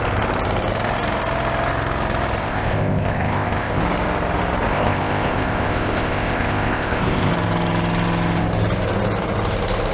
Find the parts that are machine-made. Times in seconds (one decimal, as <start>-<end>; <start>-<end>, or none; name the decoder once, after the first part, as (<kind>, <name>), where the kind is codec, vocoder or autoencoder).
2.4-3.8 (codec, ZipCodec); 4.7-7.3